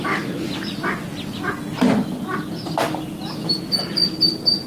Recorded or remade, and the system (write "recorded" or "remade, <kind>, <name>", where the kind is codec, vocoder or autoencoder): recorded